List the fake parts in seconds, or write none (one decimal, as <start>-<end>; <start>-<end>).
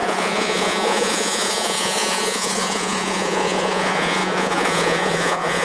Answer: 0.0-5.6